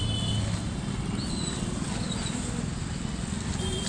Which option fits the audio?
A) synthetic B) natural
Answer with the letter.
B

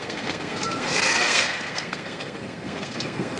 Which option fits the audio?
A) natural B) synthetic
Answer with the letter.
B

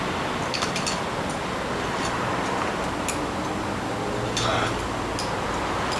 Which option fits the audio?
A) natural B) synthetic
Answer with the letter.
A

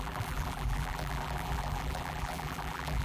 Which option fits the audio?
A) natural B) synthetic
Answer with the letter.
B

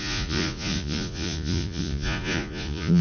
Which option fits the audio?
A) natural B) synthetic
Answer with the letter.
B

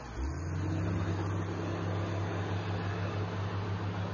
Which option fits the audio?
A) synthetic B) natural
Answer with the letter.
B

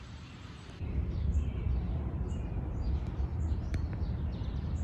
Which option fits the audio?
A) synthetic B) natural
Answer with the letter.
A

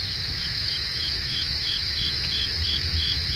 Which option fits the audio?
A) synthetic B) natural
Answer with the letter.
A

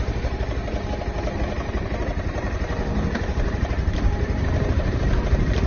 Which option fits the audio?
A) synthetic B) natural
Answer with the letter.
A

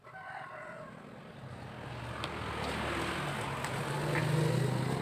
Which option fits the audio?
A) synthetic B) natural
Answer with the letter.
B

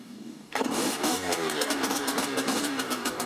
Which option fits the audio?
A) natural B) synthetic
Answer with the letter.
B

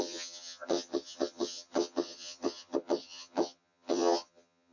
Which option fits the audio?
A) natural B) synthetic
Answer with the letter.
B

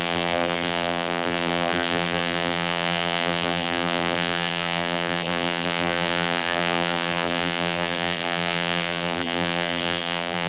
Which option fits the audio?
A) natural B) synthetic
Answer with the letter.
B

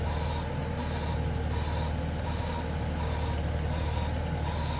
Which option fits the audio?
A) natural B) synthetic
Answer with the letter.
A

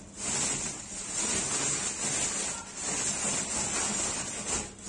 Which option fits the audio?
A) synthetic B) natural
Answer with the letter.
B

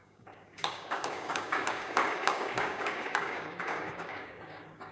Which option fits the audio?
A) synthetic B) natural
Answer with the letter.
A